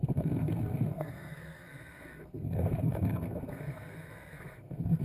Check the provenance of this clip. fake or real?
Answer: fake